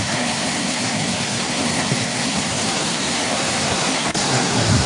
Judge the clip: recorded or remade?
remade